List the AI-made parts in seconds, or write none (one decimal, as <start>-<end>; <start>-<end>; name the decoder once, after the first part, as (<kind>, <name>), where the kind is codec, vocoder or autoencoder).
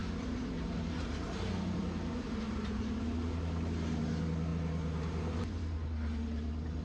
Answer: 0.0-2.8 (vocoder, BigVGAN v2); 4.5-5.4